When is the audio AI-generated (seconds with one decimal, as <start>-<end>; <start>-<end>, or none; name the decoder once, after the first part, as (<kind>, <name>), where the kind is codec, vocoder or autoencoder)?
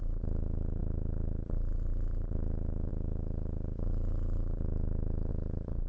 none